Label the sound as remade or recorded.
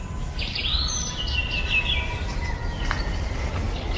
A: recorded